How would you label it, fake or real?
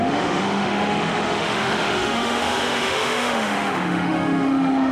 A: fake